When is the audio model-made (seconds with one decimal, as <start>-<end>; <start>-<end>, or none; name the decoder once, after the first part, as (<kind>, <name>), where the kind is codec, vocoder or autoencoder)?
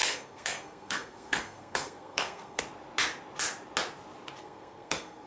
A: 0.0-2.6 (codec, SNAC); 4.4-5.3